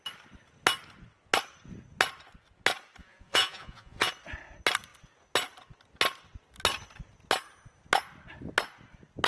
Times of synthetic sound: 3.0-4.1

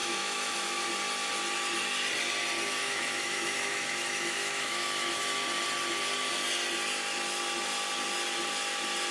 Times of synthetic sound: 0.0-0.8; 2.8-5.2

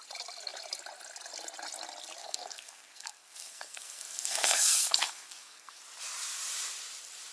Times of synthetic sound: 2.2-5.8

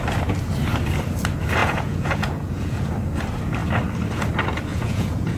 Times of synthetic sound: 1.6-2.9; 4.7-5.4

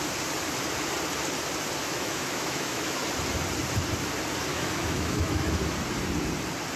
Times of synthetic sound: 1.8-3.0; 4.5-5.6